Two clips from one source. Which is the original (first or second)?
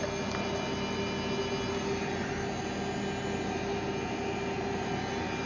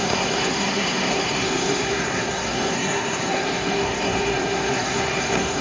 first